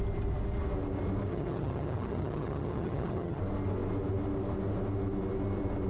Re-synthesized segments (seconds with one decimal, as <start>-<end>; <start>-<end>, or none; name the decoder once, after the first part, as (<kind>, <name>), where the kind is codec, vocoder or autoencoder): 1.3-3.4 (vocoder, HiFi-GAN)